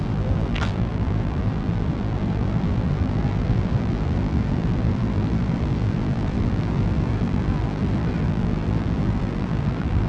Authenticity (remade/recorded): remade